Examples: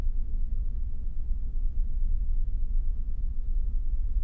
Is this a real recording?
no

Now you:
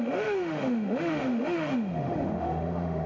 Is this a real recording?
no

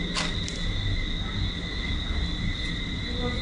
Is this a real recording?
yes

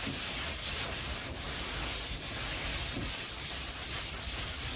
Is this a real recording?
yes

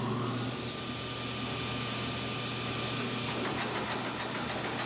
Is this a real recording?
yes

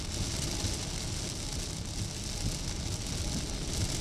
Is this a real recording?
yes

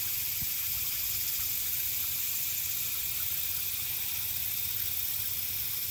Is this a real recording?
yes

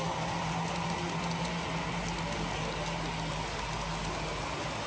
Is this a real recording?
yes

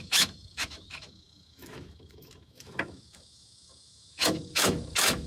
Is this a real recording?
no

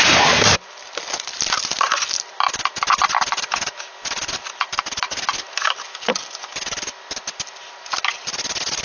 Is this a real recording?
yes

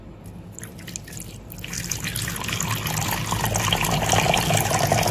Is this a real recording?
yes